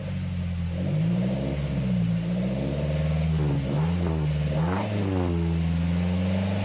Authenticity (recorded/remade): recorded